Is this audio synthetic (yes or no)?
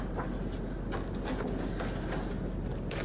no